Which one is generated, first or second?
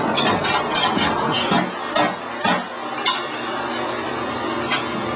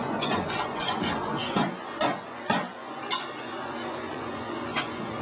second